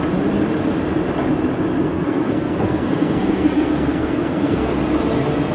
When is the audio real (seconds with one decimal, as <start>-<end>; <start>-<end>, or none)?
0.0-1.8; 4.7-5.5